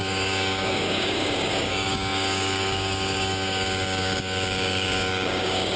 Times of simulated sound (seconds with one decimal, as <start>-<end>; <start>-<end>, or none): 0.0-5.8